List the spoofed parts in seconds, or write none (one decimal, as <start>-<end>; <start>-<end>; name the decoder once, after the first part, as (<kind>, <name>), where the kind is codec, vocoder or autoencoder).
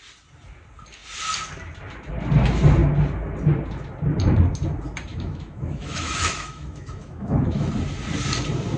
5.1-7.7 (autoencoder, DAC-VAE)